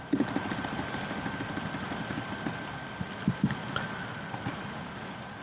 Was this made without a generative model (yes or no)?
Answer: yes